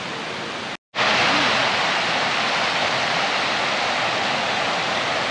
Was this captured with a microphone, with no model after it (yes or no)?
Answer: yes